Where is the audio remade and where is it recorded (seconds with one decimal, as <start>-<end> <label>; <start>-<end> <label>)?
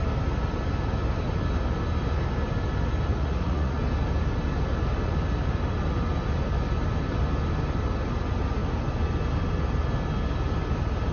0.0-3.1 recorded; 3.1-3.8 remade; 3.8-11.1 recorded